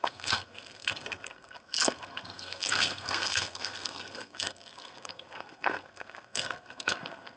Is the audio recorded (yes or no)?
no